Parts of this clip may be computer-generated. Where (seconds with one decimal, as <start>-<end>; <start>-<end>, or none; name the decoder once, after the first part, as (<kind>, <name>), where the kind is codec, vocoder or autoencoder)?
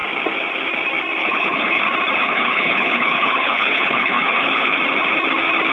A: 1.2-1.8 (codec, HILCodec); 2.2-4.8